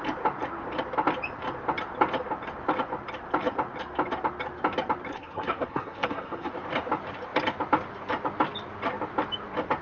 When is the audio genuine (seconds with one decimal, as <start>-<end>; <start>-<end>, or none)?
0.0-5.1; 6.5-9.8